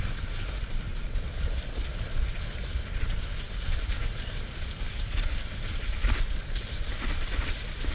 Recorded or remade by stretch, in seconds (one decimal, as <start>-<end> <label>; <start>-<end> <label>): 0.0-7.9 recorded